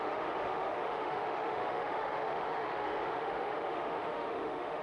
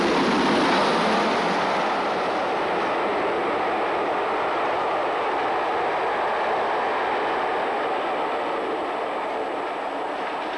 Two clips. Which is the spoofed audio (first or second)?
first